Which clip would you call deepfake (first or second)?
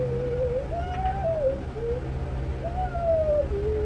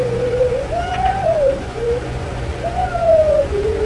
second